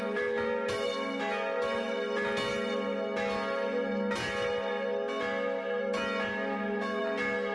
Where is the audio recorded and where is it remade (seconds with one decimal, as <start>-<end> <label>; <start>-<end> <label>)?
0.0-7.5 recorded